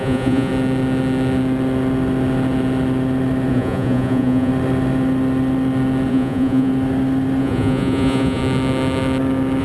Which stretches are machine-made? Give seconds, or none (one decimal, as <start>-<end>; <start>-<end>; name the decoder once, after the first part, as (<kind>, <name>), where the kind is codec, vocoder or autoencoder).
0.0-0.5 (vocoder, Vocos); 3.5-4.5; 6.1-6.7; 7.4-8.4